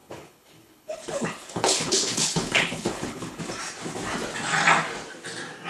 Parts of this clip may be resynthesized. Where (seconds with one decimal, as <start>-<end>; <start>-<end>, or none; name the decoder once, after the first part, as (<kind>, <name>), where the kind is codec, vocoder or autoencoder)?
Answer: 0.0-3.4 (codec, HILCodec)